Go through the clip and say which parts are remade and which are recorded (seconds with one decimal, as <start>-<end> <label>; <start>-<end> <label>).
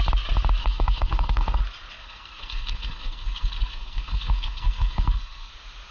0.0-0.6 recorded; 0.6-1.6 remade; 1.6-2.0 recorded; 2.0-5.5 remade; 5.5-5.9 recorded